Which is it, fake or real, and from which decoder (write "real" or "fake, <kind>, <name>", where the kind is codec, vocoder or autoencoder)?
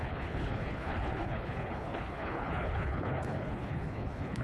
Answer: fake, codec, HILCodec